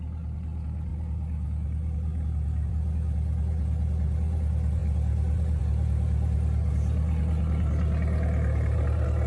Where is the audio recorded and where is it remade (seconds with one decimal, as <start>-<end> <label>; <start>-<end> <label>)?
0.0-9.3 recorded